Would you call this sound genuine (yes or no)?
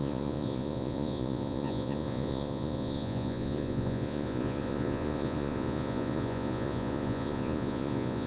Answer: no